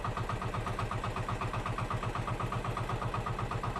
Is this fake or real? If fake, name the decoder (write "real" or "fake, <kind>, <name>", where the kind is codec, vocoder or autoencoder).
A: real